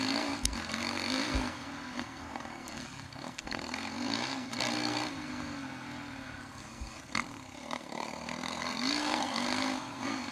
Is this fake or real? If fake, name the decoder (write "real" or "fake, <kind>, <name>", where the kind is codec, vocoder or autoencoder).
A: fake, codec, SNAC